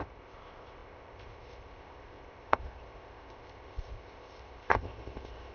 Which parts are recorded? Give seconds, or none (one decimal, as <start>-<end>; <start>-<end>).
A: none